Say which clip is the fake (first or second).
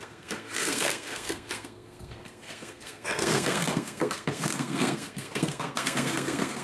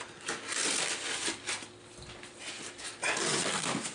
first